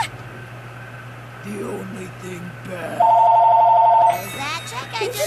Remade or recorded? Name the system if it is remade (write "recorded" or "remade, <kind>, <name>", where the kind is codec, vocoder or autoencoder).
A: recorded